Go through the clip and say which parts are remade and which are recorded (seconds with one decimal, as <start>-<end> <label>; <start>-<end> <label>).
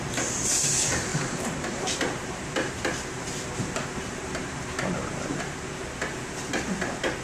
0.0-1.1 recorded; 1.1-5.4 remade; 5.4-7.2 recorded